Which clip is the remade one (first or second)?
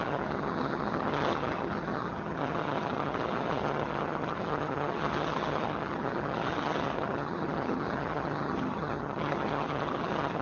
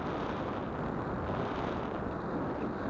first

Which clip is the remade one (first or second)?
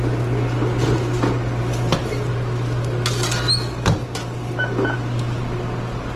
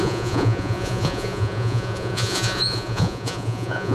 second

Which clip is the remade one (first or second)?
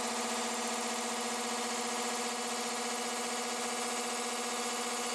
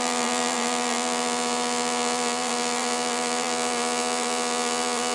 second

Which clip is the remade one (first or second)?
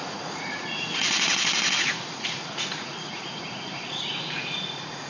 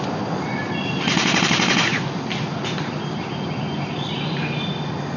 first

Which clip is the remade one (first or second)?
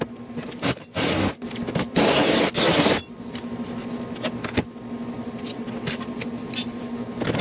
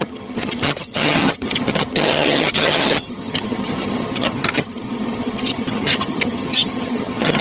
second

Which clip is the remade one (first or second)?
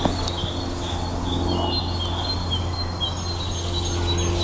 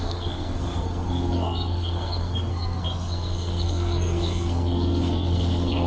second